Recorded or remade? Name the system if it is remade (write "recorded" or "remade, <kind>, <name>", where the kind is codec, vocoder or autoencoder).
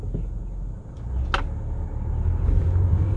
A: recorded